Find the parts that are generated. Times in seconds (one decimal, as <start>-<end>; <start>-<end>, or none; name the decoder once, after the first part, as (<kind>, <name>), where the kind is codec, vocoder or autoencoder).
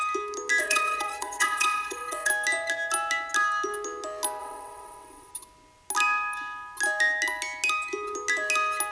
0.6-2.3 (vocoder, WaveNeXt); 4.4-5.3